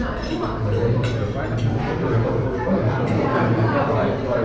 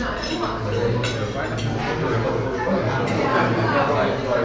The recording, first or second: second